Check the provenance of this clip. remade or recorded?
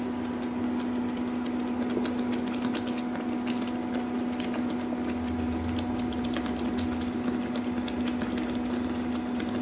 recorded